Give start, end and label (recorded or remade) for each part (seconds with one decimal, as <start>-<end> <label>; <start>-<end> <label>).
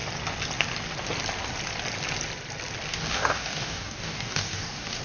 0.0-2.9 recorded; 2.9-5.0 remade